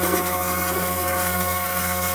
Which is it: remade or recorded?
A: remade